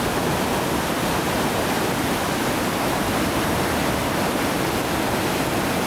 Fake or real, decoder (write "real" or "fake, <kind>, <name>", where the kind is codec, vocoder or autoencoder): fake, vocoder, BigVGAN v2